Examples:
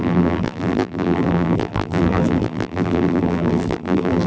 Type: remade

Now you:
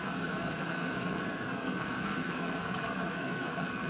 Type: remade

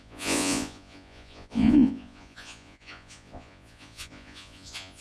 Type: remade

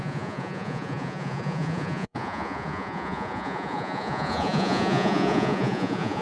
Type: remade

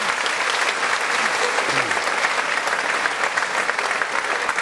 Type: recorded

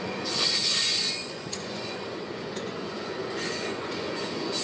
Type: remade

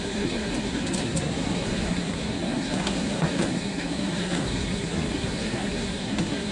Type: remade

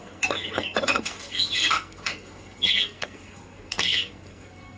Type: remade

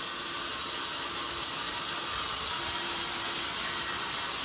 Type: recorded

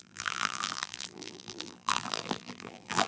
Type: remade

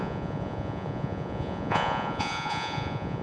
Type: remade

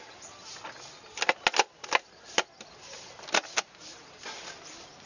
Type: recorded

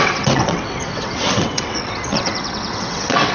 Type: remade